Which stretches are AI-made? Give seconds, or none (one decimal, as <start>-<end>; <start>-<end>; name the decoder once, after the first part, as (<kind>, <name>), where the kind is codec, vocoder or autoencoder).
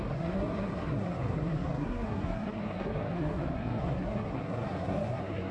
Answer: 0.0-5.5 (codec, SNAC)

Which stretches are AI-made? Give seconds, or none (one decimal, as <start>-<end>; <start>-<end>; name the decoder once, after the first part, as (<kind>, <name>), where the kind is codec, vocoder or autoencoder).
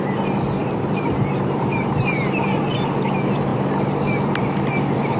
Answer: 0.6-2.6 (vocoder, BigVGAN v2)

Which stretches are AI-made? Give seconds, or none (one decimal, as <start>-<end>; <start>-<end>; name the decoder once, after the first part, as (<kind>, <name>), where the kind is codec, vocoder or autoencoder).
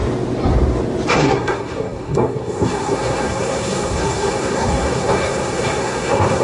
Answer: 1.1-6.4 (codec, SNAC)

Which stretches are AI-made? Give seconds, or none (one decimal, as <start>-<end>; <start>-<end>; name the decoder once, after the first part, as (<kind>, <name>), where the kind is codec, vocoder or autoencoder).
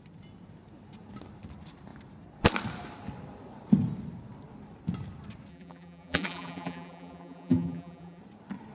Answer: 5.5-8.2 (vocoder, BigVGAN v2)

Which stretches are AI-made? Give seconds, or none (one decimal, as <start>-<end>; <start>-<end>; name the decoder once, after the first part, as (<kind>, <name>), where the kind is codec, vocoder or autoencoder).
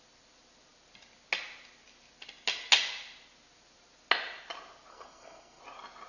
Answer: 4.9-5.6 (codec, SNAC)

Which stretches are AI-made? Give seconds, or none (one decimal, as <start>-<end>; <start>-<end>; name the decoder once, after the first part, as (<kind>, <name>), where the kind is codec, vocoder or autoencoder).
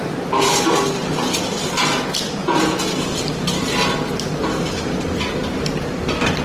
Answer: 2.4-2.9 (vocoder, Vocos)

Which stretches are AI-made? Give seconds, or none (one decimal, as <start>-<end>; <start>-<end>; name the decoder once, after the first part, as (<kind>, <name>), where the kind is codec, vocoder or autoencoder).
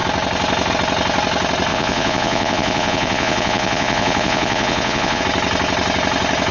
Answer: 1.7-5.2 (vocoder, Vocos)